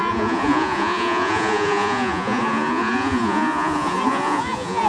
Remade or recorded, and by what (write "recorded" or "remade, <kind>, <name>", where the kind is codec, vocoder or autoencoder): remade, vocoder, Vocos